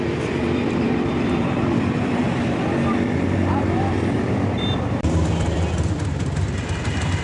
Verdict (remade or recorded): remade